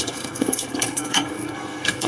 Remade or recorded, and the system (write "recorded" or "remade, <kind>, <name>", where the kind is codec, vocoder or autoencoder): remade, codec, SNAC